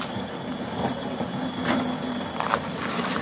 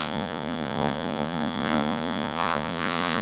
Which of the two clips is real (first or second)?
first